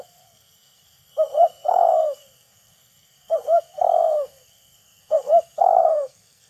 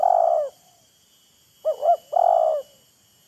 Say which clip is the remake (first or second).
first